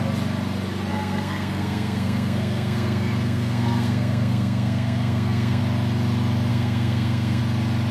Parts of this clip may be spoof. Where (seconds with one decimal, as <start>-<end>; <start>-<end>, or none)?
0.9-5.6; 6.5-7.4